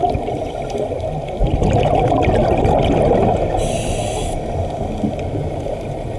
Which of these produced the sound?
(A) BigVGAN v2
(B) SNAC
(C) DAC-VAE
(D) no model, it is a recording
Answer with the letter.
D